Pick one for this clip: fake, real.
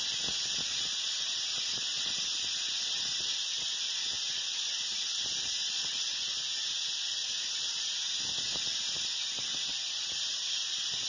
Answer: real